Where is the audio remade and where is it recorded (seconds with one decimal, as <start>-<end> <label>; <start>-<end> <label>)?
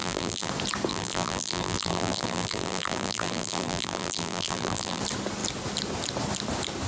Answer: 0.0-0.5 remade; 0.5-0.9 recorded; 0.9-5.0 remade; 5.0-6.9 recorded